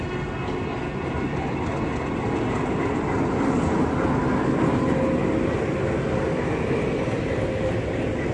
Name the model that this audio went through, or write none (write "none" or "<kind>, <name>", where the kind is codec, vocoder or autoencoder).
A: none